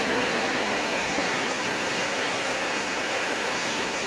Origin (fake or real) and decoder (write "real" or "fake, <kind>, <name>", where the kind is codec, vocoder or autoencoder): fake, codec, SNAC